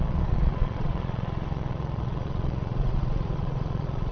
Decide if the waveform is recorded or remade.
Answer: remade